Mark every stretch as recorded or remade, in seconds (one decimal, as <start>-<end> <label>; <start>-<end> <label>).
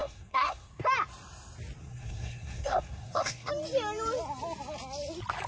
0.0-0.7 remade; 0.7-1.8 recorded; 1.8-3.5 remade; 3.5-5.5 recorded